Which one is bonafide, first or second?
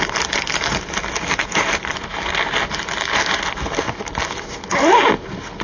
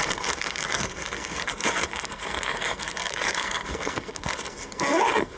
first